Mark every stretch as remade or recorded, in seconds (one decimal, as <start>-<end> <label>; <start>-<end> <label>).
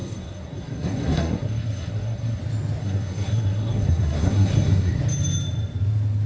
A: 0.0-2.4 remade; 2.4-2.8 recorded; 2.8-5.0 remade; 5.0-6.3 recorded